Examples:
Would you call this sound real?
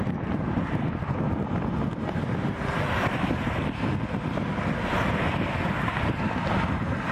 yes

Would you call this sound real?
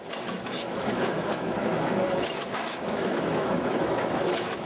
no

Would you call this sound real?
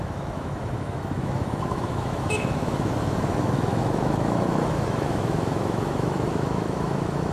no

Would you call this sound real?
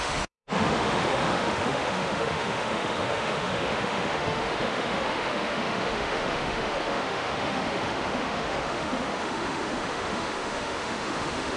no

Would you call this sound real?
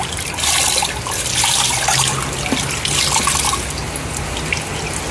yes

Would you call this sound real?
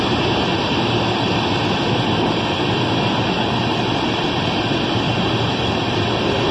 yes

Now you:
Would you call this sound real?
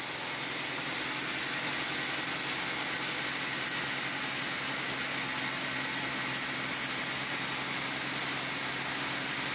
yes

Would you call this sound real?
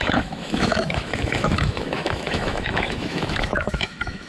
no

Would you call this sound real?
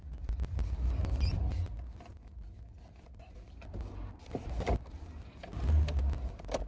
yes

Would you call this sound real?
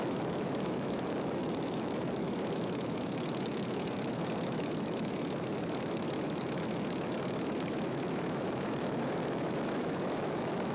no